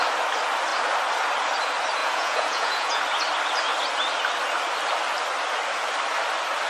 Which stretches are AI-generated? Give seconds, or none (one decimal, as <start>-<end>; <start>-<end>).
2.0-3.0